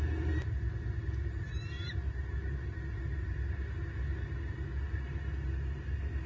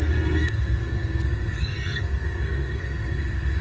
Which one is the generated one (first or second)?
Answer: second